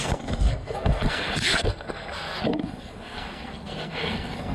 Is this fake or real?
fake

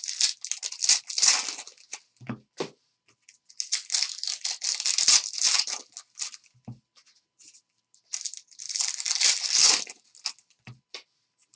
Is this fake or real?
real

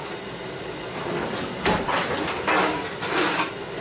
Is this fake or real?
real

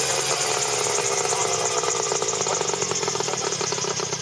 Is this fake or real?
real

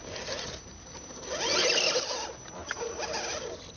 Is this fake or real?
real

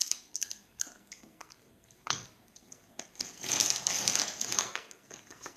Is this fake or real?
fake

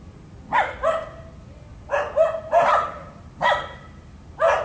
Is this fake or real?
real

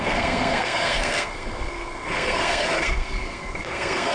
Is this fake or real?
fake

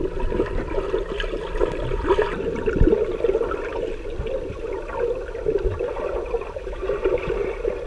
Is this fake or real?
real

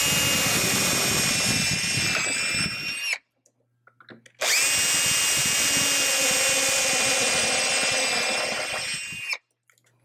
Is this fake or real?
real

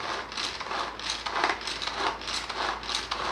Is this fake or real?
real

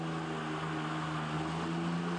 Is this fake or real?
real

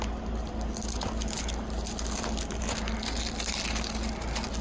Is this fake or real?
real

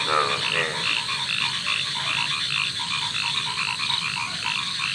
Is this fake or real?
real